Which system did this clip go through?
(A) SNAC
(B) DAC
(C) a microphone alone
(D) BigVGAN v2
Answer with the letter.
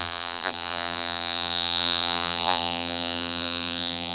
D